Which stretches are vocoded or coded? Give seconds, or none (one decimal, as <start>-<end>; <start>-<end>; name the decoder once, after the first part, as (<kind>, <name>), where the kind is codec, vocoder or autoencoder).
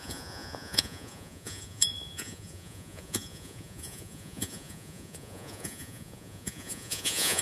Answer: 0.0-7.4 (vocoder, Vocos)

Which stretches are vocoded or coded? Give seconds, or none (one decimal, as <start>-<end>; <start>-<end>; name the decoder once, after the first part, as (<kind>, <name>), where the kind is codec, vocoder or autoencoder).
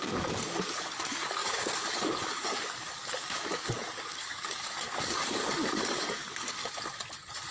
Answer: 0.0-6.6 (codec, DAC)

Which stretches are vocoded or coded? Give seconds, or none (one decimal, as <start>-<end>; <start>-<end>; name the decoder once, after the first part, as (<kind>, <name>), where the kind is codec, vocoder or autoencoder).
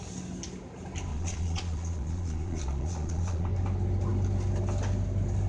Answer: 1.1-3.5 (vocoder, Vocos)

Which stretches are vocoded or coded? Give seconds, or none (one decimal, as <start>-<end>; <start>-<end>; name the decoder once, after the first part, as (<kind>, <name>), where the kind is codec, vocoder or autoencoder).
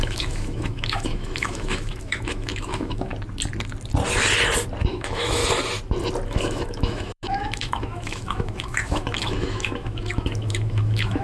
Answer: 0.0-3.1 (autoencoder, DAC-VAE); 4.9-5.4; 6.3-11.2